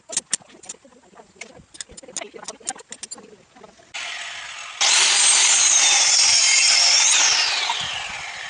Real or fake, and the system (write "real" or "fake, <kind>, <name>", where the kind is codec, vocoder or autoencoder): real